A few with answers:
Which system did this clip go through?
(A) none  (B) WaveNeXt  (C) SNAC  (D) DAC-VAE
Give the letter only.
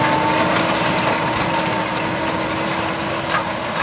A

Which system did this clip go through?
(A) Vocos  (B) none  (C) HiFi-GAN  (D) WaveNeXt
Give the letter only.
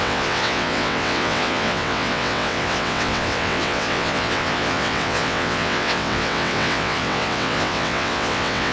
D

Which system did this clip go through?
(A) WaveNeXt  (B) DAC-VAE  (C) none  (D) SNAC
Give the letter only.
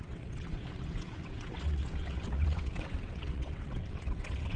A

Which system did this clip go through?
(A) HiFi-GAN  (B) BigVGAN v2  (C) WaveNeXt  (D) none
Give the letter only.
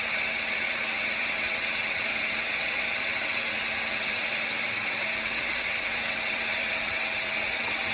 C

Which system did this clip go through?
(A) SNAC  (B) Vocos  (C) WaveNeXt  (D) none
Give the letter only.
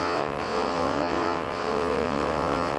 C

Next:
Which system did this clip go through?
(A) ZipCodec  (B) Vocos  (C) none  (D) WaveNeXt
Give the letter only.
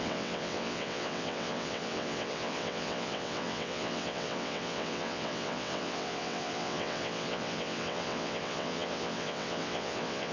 D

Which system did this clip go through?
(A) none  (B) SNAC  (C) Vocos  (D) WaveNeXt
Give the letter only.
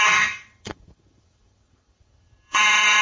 D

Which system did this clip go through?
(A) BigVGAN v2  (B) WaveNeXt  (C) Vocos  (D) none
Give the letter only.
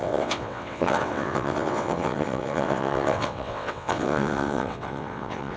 B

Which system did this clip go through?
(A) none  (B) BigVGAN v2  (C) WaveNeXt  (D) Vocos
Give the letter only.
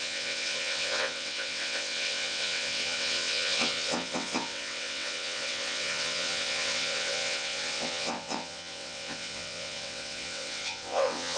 C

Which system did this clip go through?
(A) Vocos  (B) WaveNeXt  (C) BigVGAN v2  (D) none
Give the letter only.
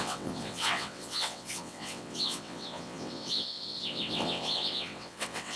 B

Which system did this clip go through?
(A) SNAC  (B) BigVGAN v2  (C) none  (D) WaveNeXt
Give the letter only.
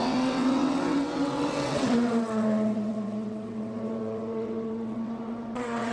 D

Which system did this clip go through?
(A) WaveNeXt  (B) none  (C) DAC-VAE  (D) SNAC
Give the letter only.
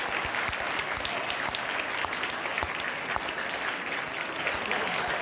B